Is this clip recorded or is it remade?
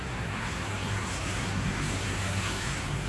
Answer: remade